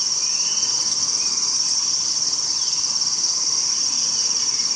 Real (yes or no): yes